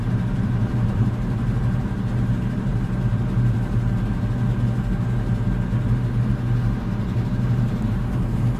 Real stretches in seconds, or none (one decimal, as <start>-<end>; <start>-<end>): 2.7-7.0